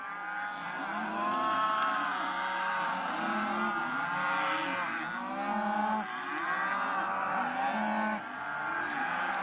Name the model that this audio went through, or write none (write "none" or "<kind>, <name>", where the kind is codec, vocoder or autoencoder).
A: none